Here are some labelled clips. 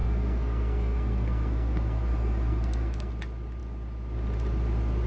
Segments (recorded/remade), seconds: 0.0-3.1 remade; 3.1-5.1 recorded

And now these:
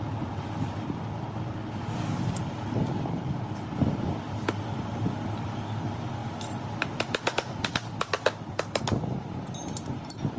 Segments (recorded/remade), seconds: 0.0-10.4 recorded